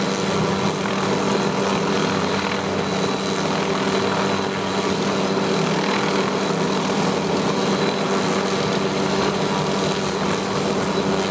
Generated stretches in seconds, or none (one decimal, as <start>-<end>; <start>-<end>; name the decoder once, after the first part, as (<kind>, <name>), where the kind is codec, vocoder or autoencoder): none